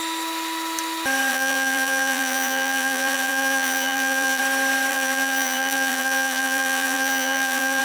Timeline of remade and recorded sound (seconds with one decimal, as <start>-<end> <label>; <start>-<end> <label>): 0.0-1.3 recorded; 1.3-4.4 remade; 4.4-4.9 recorded; 4.9-7.8 remade

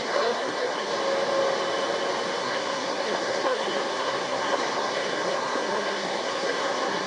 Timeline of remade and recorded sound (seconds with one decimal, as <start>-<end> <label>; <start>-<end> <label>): 0.0-0.9 remade; 0.9-2.4 recorded; 2.4-7.1 remade